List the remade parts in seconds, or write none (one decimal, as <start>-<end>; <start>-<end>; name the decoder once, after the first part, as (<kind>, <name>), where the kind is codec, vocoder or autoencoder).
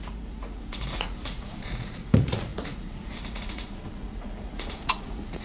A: 0.0-5.4 (vocoder, Vocos)